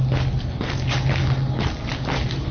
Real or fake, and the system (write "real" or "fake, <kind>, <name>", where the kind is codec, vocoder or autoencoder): real